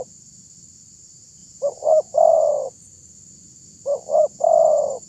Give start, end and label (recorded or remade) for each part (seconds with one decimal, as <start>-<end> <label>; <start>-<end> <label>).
0.0-1.4 recorded; 1.4-2.3 remade; 2.3-3.9 recorded; 3.9-5.1 remade